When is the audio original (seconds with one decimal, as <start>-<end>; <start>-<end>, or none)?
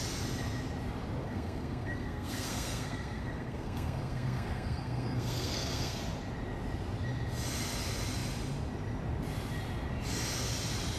0.0-1.2; 6.0-11.0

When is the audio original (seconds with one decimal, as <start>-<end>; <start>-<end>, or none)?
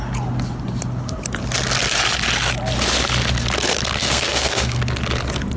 0.0-4.0; 4.8-5.6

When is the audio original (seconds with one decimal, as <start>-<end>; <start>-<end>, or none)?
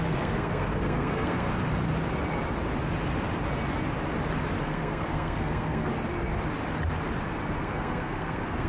1.5-4.6; 5.9-7.6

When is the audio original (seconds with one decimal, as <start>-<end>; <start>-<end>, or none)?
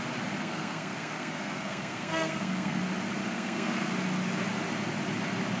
0.0-0.4; 2.8-3.2; 3.9-5.6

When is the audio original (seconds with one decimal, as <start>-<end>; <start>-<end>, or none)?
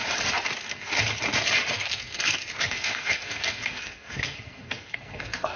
0.0-0.6; 1.0-1.7